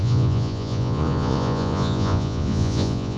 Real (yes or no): no